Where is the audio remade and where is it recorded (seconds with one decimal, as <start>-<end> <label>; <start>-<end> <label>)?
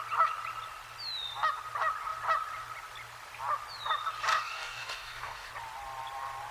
0.0-4.3 recorded; 4.3-5.5 remade; 5.5-6.5 recorded